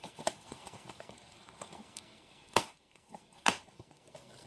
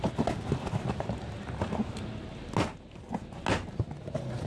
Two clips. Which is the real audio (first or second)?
second